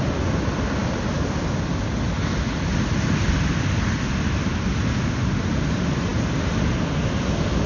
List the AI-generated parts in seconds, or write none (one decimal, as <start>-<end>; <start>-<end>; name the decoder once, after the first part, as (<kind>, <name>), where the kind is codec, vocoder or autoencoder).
none